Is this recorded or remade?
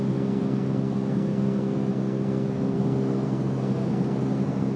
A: remade